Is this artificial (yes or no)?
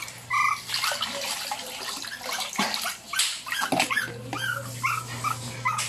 no